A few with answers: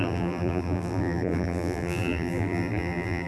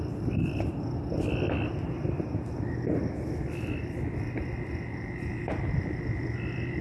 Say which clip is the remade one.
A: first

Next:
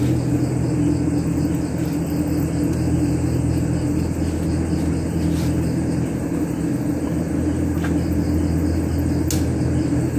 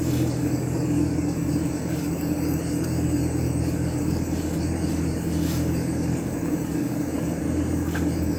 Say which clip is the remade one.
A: second